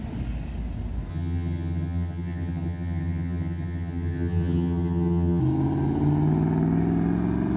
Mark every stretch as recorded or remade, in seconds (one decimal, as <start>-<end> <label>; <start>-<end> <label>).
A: 0.0-1.1 recorded; 1.1-5.4 remade; 5.4-7.6 recorded